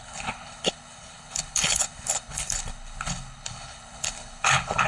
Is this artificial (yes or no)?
yes